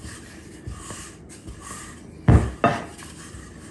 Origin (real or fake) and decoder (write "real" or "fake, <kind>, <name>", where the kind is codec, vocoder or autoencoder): real